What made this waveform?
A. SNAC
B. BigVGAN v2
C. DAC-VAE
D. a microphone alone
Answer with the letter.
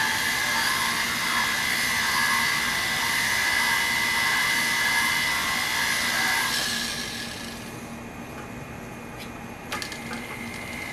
D